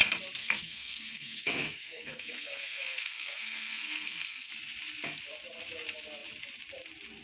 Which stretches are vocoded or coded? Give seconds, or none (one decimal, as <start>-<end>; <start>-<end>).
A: 0.4-4.5